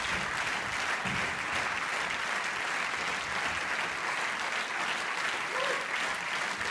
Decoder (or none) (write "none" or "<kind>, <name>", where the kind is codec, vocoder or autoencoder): none